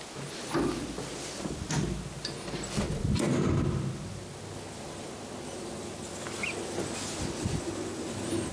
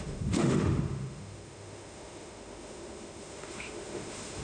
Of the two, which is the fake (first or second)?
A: second